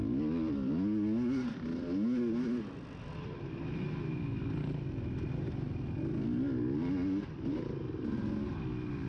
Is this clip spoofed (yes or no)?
no